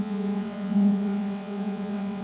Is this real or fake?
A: fake